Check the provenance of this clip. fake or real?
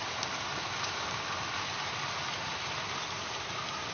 real